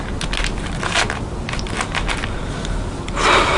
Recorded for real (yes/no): yes